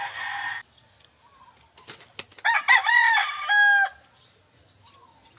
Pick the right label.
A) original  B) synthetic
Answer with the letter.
A